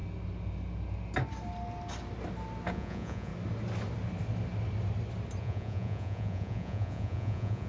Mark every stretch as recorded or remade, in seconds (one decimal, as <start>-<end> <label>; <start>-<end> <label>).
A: 0.0-2.7 recorded; 2.7-3.3 remade; 3.3-5.4 recorded; 5.4-7.7 remade